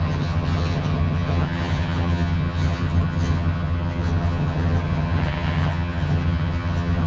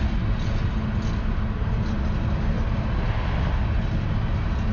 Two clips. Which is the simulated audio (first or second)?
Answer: first